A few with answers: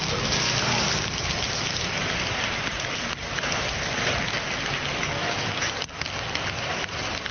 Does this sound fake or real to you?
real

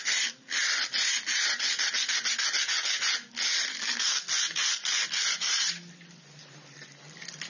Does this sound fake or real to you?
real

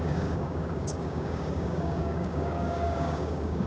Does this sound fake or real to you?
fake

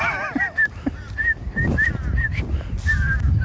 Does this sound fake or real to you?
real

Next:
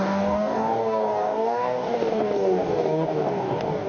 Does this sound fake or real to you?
fake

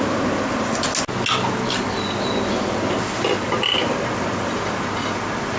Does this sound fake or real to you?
real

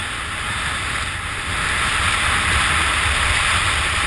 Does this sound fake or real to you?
real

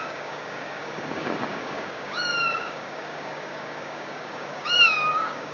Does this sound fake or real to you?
fake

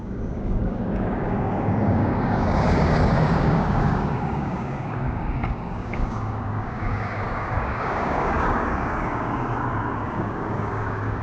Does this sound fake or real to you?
fake